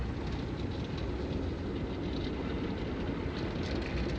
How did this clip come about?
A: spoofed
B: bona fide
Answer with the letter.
B